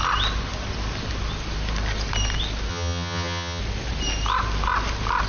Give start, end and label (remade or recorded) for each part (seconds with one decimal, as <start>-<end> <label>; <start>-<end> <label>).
0.0-2.7 recorded; 2.7-3.6 remade; 3.6-5.3 recorded